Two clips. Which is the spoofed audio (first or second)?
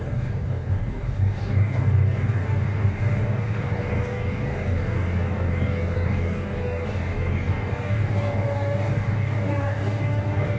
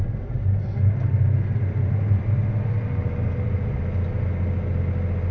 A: first